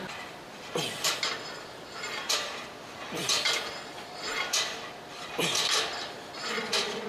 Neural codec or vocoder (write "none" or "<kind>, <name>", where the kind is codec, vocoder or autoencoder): vocoder, BigVGAN v2